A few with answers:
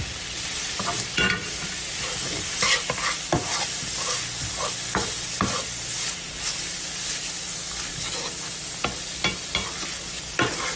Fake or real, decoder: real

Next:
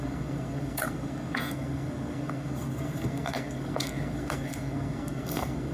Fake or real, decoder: fake, codec, SNAC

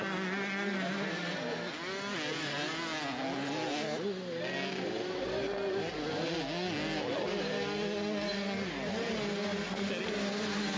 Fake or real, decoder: real